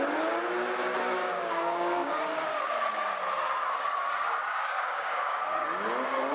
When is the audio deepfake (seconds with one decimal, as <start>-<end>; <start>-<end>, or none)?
1.2-3.1; 4.5-5.4